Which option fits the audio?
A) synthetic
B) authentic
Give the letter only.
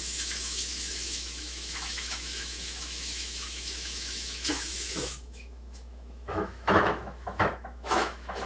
A